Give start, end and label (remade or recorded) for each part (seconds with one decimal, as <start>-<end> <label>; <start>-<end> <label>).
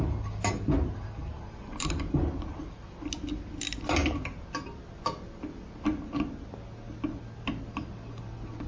0.0-1.2 recorded; 1.2-2.2 remade; 2.2-8.7 recorded